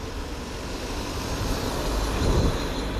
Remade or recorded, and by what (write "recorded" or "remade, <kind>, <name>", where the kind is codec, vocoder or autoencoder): recorded